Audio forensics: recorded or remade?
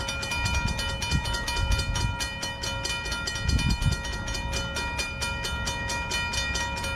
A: recorded